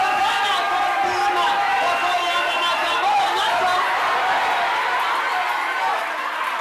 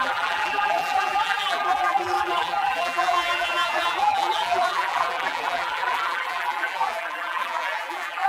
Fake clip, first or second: second